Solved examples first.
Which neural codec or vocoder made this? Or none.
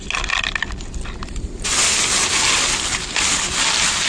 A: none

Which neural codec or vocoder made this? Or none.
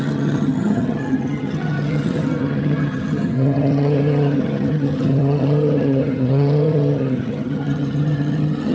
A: vocoder, HiFi-GAN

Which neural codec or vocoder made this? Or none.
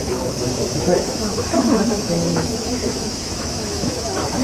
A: autoencoder, DAC-VAE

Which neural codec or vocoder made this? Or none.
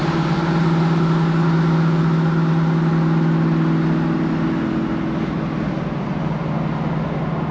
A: none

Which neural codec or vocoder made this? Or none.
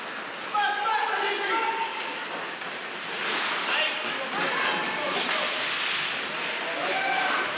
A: none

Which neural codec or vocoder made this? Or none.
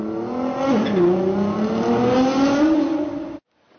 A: none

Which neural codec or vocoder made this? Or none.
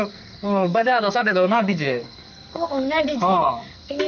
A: codec, SNAC